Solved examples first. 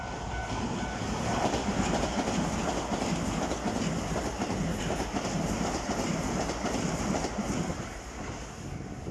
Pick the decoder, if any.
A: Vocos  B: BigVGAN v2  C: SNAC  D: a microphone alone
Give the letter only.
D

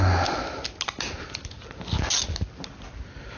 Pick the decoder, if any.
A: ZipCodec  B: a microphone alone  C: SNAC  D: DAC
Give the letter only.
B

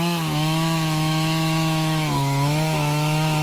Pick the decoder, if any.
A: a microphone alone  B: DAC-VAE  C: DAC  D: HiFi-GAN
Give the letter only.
B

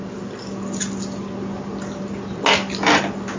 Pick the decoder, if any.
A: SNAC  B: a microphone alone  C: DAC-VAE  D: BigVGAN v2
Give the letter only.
B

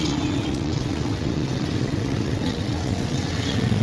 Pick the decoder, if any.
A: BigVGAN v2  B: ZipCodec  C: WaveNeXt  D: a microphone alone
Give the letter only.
C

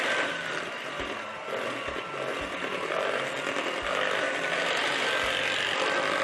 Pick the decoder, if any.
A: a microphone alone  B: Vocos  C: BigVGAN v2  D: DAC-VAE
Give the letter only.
C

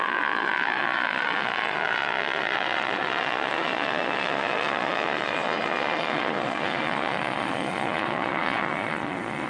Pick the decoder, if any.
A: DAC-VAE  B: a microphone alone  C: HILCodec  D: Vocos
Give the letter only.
D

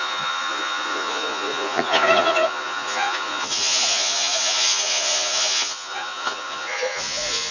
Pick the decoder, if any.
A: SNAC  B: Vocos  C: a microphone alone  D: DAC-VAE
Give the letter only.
B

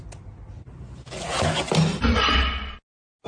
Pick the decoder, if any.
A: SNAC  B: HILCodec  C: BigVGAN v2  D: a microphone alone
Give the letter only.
D